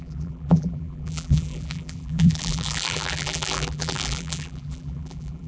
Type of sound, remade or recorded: remade